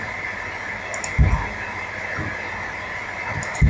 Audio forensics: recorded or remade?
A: recorded